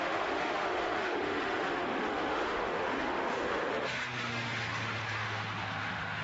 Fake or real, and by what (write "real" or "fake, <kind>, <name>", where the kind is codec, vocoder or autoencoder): fake, autoencoder, DAC-VAE